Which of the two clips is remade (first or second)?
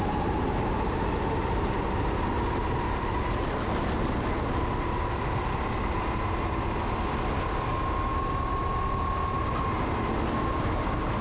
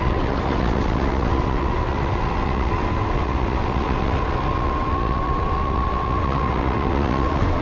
second